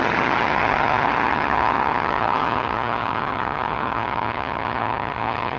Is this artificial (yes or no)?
yes